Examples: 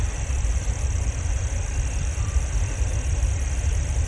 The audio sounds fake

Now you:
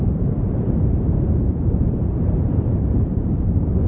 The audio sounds fake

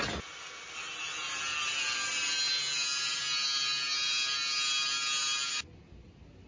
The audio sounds real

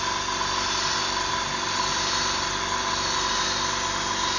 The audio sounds real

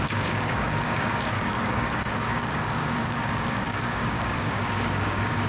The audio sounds fake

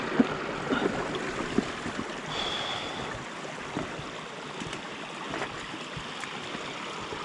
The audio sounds real